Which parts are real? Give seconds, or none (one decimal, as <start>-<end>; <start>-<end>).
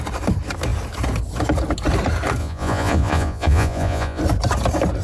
0.0-2.4; 4.2-5.0